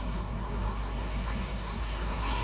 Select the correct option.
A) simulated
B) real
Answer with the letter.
A